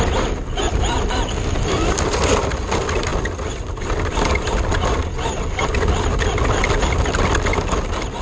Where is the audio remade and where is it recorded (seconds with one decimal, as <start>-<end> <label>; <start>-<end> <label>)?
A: 0.0-8.2 recorded